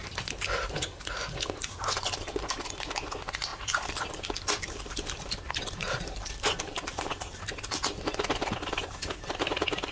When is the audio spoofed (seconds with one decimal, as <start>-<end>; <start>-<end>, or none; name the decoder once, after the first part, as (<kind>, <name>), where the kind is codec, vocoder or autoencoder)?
3.5-7.4 (vocoder, BigVGAN v2)